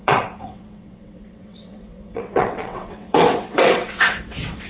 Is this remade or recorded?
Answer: remade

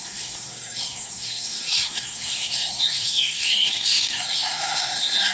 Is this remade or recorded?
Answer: remade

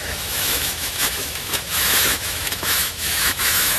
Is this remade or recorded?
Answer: remade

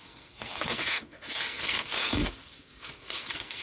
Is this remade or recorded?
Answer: remade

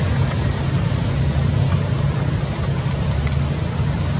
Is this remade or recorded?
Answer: recorded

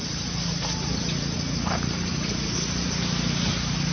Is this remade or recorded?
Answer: recorded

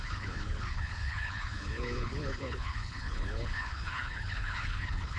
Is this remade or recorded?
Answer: remade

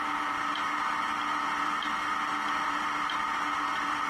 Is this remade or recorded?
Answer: recorded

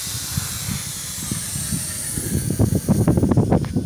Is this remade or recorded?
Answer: recorded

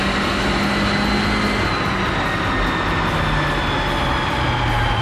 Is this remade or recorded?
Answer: recorded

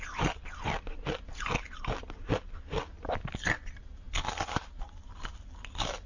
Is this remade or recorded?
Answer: recorded